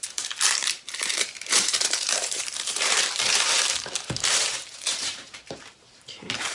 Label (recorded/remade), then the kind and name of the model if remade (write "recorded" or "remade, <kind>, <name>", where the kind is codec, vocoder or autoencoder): remade, vocoder, BigVGAN v2